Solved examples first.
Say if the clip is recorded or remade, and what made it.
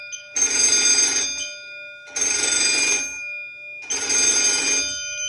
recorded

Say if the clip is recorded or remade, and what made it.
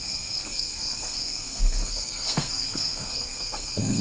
remade, codec, SNAC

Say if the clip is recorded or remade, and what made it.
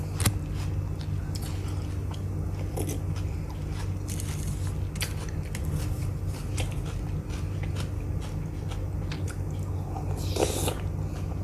recorded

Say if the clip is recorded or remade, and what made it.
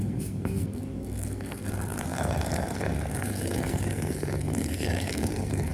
remade, codec, SNAC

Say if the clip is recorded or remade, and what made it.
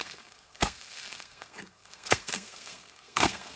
remade, codec, SNAC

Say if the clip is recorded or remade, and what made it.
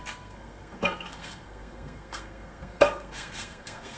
remade, codec, SNAC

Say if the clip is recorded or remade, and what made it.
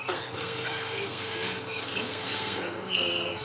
remade, codec, SNAC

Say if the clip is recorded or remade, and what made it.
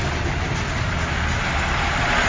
recorded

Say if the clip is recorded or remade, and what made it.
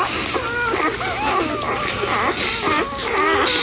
recorded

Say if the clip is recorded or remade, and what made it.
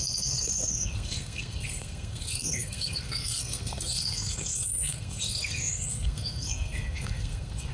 remade, codec, SNAC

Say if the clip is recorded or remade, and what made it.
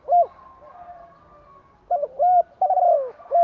recorded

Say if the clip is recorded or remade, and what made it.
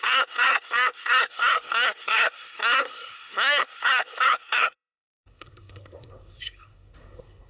remade, codec, SNAC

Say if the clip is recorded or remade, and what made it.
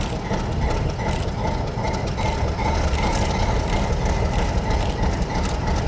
recorded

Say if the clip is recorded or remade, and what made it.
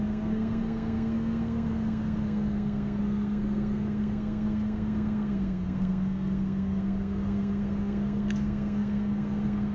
remade, codec, SNAC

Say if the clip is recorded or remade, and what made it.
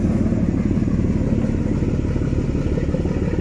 recorded